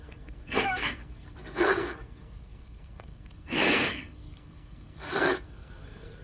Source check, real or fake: fake